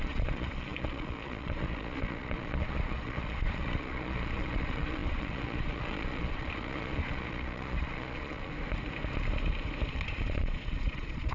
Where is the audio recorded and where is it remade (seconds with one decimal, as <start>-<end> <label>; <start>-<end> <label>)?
0.0-8.5 remade; 8.5-9.9 recorded; 9.9-11.3 remade